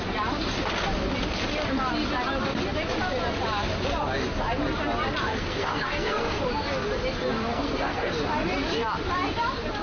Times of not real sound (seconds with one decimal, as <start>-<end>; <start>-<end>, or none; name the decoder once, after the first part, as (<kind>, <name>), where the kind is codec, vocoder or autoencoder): 5.3-6.4 (codec, SNAC); 7.5-8.1